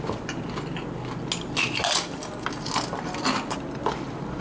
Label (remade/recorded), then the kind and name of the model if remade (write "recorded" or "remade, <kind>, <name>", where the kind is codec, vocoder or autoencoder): recorded